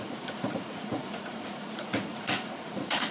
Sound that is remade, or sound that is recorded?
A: remade